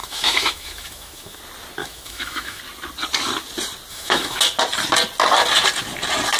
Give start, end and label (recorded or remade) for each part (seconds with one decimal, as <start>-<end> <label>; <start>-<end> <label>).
0.0-1.4 remade; 1.4-1.8 recorded; 1.8-2.6 remade; 2.6-3.9 recorded; 3.9-4.4 remade; 4.4-6.4 recorded